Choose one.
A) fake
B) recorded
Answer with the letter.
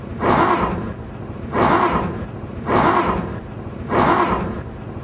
A